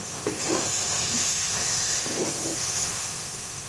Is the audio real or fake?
fake